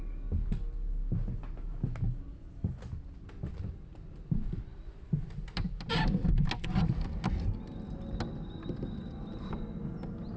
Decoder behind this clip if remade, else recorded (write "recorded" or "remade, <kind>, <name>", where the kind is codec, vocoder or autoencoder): recorded